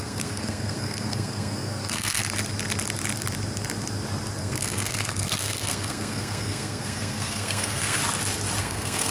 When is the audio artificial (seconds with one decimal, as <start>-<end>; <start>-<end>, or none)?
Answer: 0.0-2.2; 4.4-8.0; 8.6-9.1